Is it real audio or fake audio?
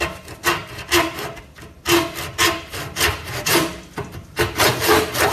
real